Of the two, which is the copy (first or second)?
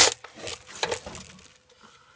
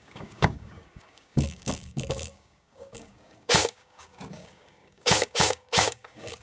second